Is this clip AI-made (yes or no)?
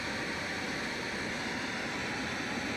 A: no